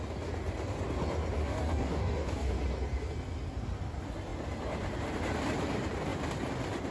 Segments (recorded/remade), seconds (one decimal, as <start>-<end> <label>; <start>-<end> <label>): 0.0-1.4 recorded; 1.4-2.5 remade; 2.5-6.9 recorded